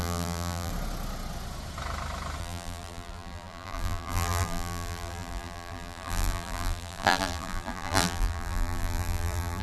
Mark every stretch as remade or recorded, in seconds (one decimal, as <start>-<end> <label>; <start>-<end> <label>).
0.0-0.7 remade; 0.7-2.4 recorded; 2.4-9.6 remade